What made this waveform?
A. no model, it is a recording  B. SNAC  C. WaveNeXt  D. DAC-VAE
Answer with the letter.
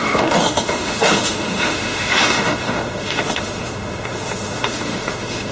D